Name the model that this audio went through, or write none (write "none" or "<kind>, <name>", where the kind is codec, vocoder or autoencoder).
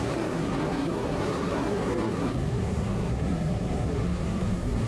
codec, SNAC